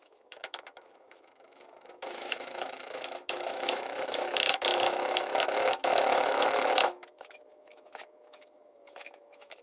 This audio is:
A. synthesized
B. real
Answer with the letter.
A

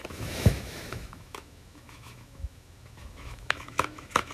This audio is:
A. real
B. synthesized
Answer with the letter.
B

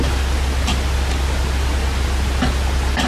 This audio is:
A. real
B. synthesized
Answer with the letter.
A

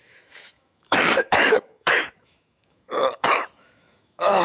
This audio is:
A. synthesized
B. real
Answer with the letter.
A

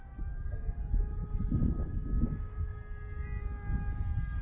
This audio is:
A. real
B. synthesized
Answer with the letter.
A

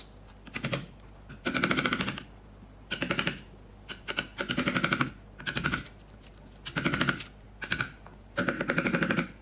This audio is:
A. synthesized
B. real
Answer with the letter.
B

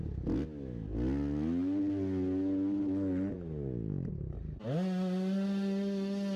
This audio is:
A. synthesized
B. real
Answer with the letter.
B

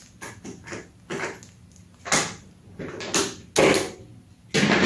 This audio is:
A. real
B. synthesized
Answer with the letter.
A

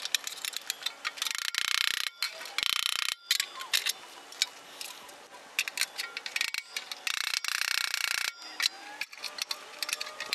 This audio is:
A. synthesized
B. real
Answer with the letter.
B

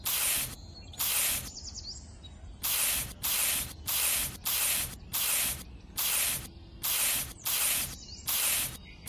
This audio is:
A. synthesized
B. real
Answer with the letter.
B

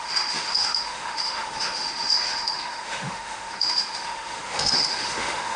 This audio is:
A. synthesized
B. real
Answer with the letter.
A